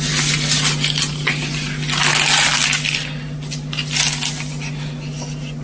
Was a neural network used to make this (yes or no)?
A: no